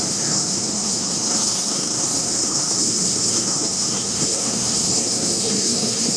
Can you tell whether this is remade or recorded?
remade